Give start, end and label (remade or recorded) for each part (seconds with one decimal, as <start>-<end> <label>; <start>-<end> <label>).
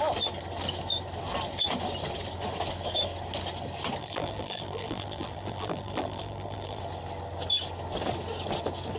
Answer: 0.0-4.0 recorded; 4.0-6.8 remade; 6.8-9.0 recorded